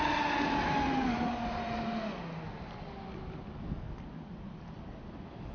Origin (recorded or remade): recorded